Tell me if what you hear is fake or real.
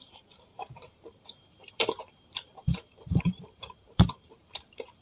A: fake